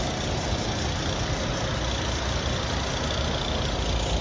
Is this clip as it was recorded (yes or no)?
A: yes